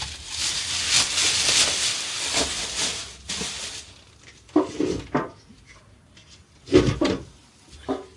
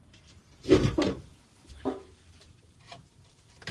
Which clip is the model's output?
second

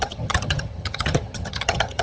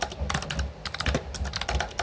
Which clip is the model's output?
first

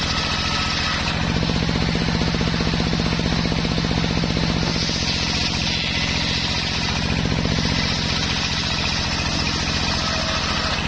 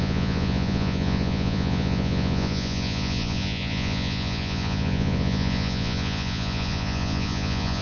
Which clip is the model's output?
second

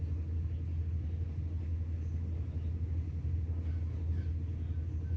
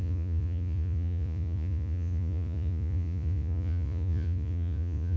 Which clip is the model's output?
second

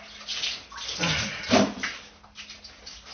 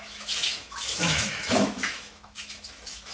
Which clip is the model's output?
second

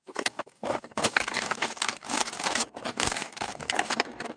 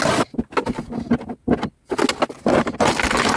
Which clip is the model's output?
first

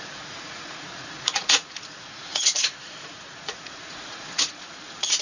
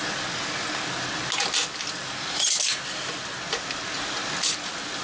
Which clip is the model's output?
first